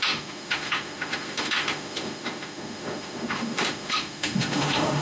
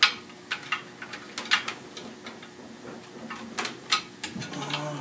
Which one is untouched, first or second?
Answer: second